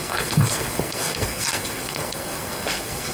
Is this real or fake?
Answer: fake